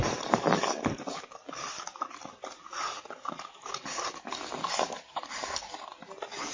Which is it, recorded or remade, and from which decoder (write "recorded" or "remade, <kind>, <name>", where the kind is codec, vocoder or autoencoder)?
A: recorded